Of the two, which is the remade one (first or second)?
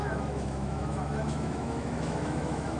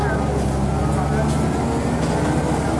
first